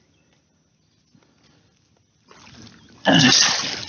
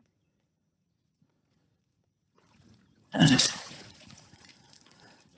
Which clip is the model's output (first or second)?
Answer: second